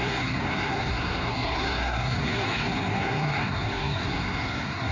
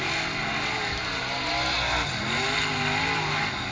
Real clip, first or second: second